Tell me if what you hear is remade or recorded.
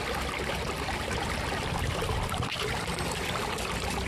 recorded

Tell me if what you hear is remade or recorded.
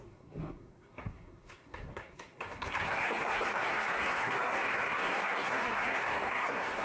remade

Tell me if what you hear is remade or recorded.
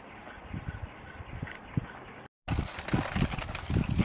recorded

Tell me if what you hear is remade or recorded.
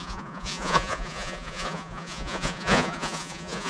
remade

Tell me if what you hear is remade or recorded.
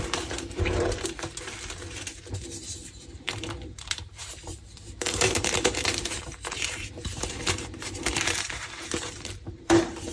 remade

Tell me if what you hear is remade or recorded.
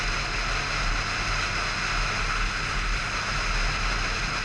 recorded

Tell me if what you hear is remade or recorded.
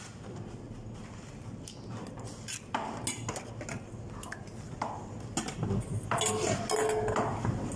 recorded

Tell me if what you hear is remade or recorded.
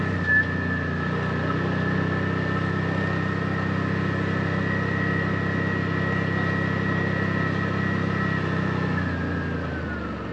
recorded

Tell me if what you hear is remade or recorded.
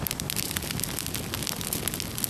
recorded